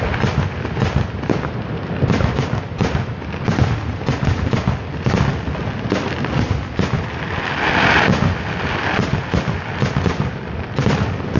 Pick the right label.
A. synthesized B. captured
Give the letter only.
B